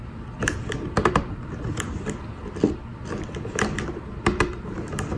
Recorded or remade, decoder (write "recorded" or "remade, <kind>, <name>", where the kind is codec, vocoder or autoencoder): remade, vocoder, BigVGAN v2